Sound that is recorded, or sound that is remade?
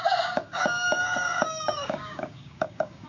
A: remade